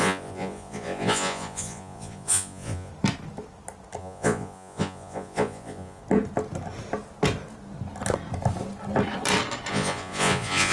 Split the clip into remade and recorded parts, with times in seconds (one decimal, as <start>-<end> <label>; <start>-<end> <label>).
0.0-2.9 remade; 2.9-4.0 recorded; 4.0-6.0 remade; 6.0-9.7 recorded; 9.7-10.7 remade